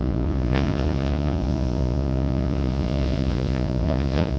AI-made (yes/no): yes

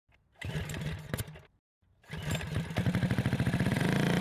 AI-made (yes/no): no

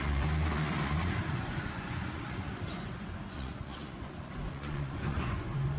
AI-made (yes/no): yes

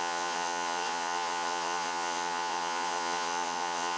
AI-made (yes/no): yes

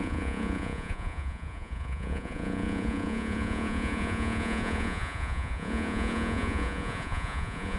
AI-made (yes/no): yes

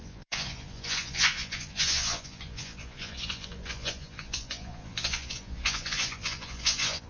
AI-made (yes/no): yes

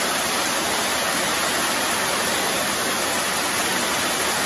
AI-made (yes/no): no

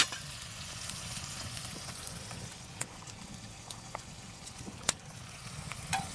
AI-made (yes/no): yes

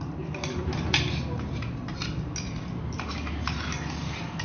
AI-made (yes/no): no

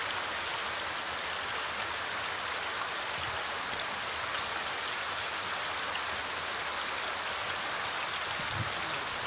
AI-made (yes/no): no